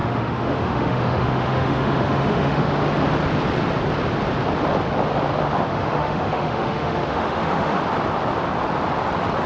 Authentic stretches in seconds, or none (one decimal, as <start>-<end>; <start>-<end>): 2.7-5.7; 7.8-9.5